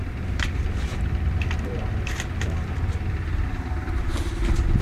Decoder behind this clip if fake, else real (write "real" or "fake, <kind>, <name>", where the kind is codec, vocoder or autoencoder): fake, vocoder, BigVGAN v2